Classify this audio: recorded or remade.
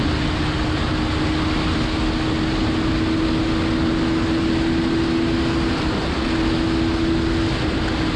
recorded